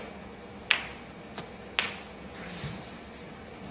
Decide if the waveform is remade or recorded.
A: recorded